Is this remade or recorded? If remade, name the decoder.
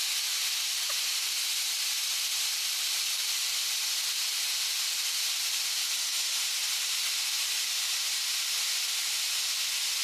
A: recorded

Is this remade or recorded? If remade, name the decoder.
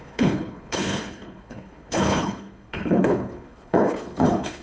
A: remade, codec, HILCodec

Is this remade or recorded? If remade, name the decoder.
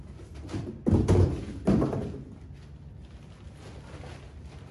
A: recorded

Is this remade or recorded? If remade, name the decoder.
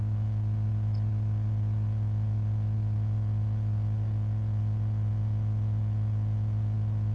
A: recorded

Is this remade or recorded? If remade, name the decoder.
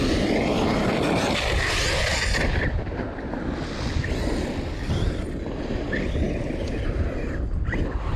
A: recorded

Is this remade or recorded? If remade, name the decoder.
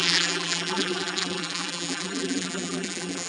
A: remade, vocoder, BigVGAN v2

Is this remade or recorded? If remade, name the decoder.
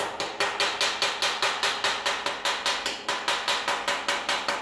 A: recorded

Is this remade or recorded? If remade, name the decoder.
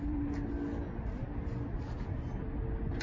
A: recorded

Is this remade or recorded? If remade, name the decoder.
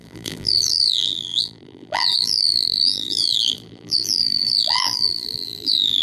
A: remade, vocoder, BigVGAN v2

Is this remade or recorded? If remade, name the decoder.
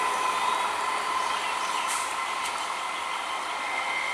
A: recorded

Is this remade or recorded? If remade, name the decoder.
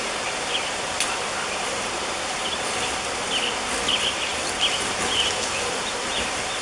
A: recorded